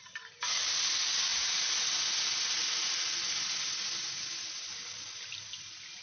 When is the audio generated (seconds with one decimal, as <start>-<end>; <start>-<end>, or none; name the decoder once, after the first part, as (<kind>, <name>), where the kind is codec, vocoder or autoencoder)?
none